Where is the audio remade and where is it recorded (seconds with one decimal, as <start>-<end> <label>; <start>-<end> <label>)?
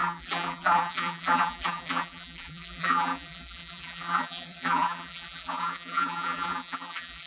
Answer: 0.0-7.3 remade